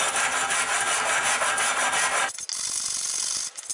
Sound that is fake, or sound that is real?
real